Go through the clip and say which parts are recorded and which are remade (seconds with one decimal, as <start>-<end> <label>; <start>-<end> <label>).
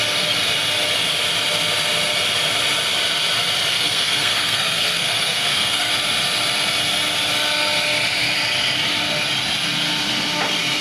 0.0-3.7 recorded; 3.7-5.9 remade; 5.9-10.8 recorded